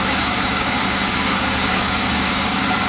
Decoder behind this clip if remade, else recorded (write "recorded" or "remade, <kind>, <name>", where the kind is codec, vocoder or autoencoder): remade, codec, DAC